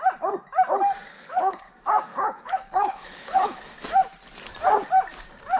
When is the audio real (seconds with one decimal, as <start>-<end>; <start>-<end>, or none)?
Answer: 0.0-1.1; 1.7-2.1; 3.6-5.6